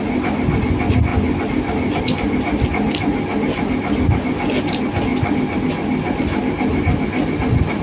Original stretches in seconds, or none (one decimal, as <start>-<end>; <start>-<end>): 0.0-7.8